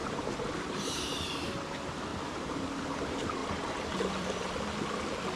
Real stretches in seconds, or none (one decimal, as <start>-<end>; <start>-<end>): 1.0-2.1; 2.7-3.4; 4.4-5.4